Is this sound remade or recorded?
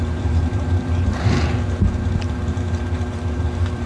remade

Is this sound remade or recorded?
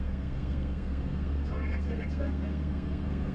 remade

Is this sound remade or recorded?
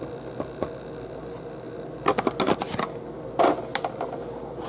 recorded